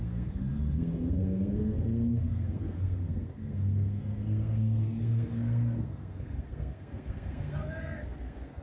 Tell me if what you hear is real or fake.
fake